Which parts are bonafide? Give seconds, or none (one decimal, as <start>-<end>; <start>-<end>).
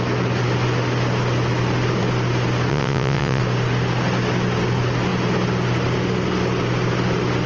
0.0-2.7; 3.4-7.5